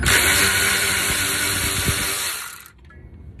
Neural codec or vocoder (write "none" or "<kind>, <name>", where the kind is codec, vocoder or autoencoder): vocoder, BigVGAN v2